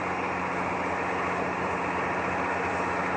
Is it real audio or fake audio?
real